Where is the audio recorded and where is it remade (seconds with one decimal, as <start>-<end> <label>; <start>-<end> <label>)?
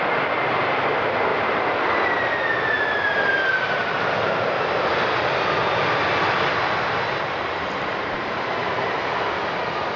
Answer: 0.0-1.3 recorded; 1.3-1.8 remade; 1.8-10.0 recorded